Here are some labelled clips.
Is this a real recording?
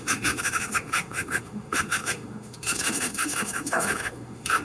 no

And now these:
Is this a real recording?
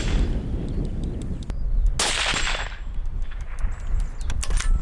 yes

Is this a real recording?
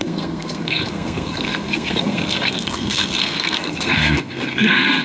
no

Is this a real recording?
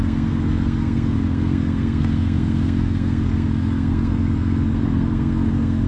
no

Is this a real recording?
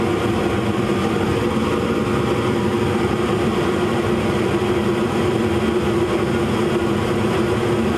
yes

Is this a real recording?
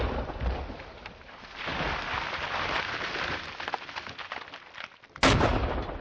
yes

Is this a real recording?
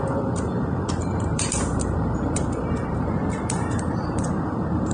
no